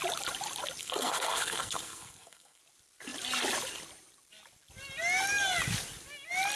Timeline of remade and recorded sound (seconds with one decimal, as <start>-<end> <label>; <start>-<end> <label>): 0.0-0.8 recorded; 0.8-2.6 remade; 2.6-6.6 recorded